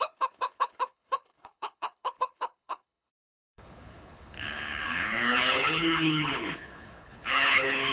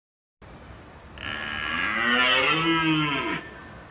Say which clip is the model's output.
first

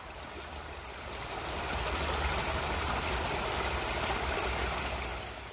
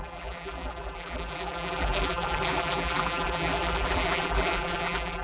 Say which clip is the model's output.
second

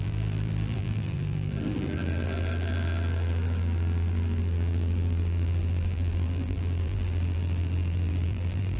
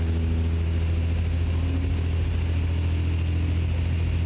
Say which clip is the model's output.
first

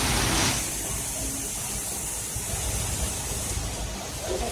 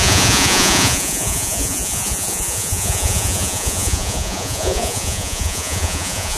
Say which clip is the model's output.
second